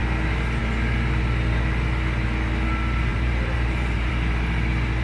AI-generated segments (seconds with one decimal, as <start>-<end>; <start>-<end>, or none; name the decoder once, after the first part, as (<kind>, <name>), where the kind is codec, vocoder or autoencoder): 3.1-4.1 (vocoder, BigVGAN v2)